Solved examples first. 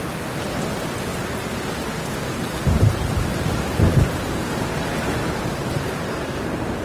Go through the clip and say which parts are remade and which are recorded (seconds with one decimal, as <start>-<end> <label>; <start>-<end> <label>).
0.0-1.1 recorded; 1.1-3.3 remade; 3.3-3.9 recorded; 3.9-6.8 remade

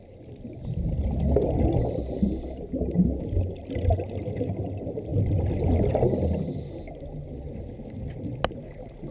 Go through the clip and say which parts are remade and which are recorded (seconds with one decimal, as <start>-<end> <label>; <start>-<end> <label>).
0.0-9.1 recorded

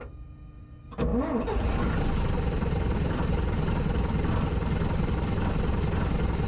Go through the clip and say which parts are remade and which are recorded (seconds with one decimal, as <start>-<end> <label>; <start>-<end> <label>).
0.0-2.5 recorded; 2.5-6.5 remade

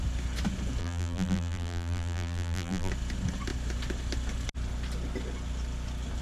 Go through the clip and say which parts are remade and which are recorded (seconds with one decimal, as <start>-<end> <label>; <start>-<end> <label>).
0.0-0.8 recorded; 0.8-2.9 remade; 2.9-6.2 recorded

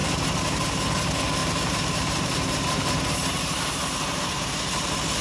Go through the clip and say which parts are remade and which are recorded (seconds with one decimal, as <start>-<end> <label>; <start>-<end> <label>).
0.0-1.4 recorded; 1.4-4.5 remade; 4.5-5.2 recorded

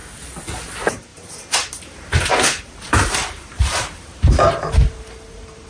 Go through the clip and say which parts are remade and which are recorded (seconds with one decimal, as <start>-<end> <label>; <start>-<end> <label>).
0.0-0.7 recorded; 0.7-5.7 remade

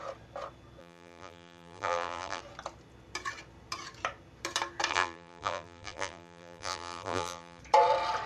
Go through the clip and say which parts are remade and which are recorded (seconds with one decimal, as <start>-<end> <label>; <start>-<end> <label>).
0.0-0.8 recorded; 0.8-2.4 remade; 2.4-4.9 recorded; 4.9-7.6 remade; 7.6-8.3 recorded